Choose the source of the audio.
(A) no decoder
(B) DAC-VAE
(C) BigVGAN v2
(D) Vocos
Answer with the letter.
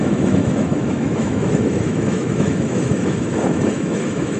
B